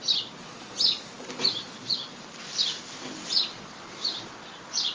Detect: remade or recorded recorded